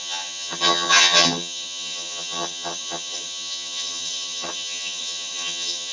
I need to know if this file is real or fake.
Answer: fake